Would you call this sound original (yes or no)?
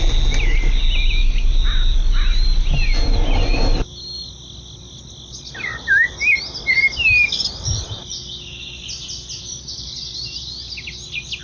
yes